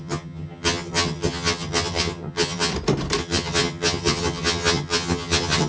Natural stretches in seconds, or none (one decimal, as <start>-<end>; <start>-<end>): 2.7-3.2